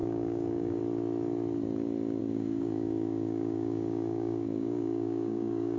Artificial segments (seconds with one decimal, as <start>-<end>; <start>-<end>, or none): 0.0-0.8; 2.2-5.8